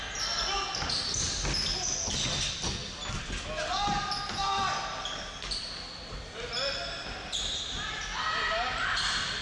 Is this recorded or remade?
recorded